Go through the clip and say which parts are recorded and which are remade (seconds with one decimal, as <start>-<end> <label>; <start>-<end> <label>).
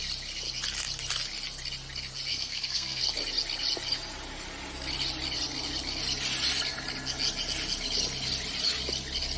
0.0-2.3 recorded; 2.3-3.0 remade; 3.0-9.4 recorded